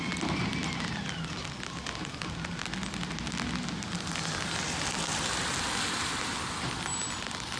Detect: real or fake real